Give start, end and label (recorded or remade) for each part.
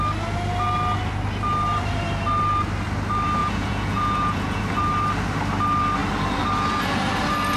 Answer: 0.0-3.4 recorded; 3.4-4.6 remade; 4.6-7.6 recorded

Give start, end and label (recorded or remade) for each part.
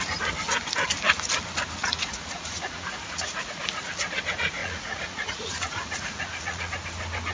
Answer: 0.0-1.8 recorded; 1.8-3.6 remade; 3.6-4.6 recorded; 4.6-6.7 remade; 6.7-7.3 recorded